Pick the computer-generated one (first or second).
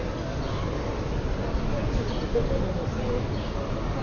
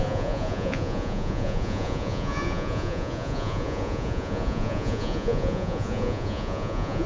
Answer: second